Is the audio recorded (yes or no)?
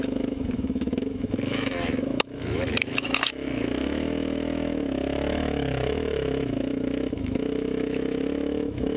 no